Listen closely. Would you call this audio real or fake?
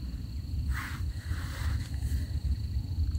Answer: real